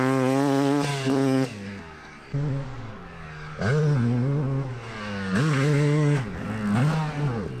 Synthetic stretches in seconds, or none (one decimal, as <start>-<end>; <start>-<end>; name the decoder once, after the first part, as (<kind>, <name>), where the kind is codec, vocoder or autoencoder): 0.9-3.6 (codec, DAC); 4.7-6.5